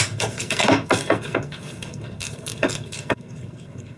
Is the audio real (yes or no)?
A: no